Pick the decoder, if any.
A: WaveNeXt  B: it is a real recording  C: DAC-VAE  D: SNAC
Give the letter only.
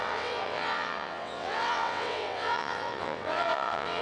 A